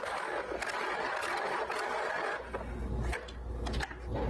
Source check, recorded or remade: recorded